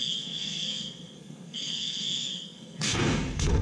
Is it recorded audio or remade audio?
remade